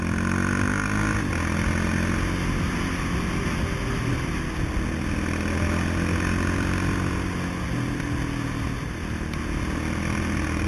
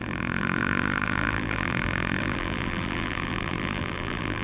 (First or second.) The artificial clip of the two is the second